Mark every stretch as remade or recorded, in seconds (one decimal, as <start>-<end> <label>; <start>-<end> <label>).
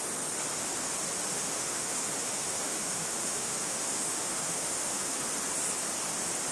0.0-1.3 recorded; 1.3-5.2 remade; 5.2-6.5 recorded